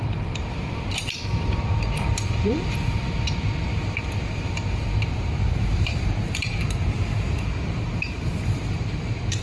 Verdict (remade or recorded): remade